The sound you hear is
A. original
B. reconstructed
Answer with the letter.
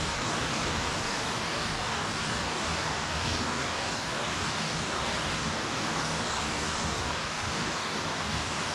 B